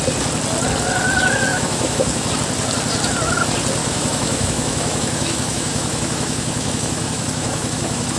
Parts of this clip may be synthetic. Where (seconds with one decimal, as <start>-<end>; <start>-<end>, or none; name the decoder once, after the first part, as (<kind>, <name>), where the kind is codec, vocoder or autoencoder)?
1.5-2.3 (autoencoder, DAC-VAE); 3.8-8.2